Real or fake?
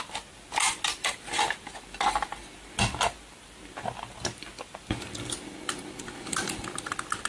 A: real